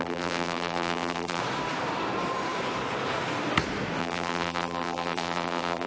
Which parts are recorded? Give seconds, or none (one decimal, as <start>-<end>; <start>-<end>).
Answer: 1.4-4.0